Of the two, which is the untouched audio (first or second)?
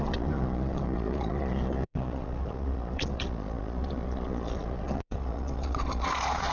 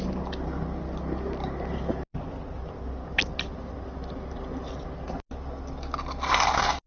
second